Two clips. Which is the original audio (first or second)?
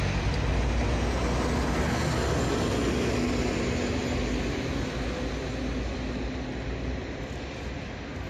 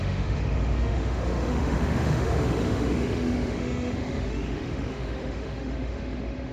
first